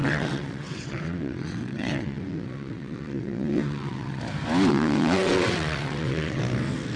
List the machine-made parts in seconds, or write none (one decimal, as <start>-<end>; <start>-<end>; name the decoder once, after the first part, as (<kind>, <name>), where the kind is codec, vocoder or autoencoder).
0.0-4.2 (vocoder, WaveNeXt); 4.7-6.4